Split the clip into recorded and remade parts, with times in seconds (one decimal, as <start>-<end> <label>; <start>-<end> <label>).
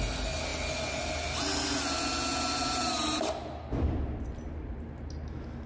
0.0-5.7 recorded